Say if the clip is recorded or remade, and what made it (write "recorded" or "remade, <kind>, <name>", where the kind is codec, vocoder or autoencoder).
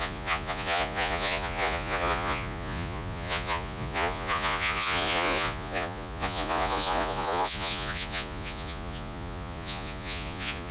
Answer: remade, vocoder, Vocos